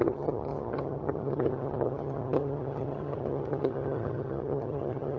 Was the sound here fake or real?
fake